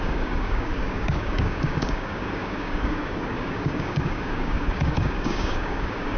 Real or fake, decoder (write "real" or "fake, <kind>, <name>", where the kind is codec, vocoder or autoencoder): fake, codec, DAC